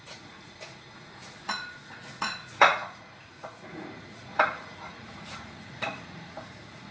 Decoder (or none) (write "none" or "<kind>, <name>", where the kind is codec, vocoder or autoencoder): vocoder, Vocos